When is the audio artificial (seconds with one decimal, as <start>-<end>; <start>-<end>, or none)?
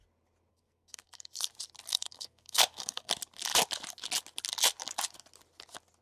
0.5-1.5; 1.9-3.1